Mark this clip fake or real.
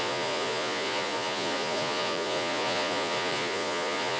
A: fake